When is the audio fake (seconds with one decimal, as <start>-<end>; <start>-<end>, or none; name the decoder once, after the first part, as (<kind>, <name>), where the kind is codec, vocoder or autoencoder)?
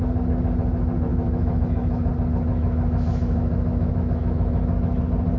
1.1-2.1 (autoencoder, DAC-VAE); 2.5-5.0